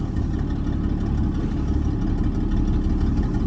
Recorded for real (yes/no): yes